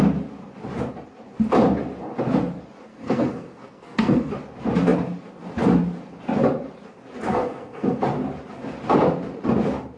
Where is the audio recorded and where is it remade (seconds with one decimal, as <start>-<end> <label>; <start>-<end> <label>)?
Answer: 0.0-2.9 recorded; 2.9-4.3 remade; 4.3-7.3 recorded; 7.3-8.0 remade; 8.0-10.0 recorded